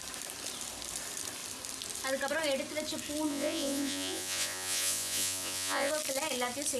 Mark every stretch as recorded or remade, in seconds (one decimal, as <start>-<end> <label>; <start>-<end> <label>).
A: 0.0-3.3 recorded; 3.3-5.9 remade; 5.9-6.8 recorded